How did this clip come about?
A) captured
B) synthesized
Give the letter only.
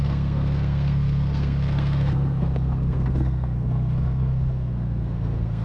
B